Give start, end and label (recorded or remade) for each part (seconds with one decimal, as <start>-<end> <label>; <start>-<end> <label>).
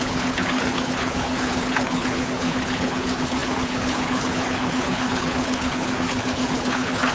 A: 0.0-7.1 remade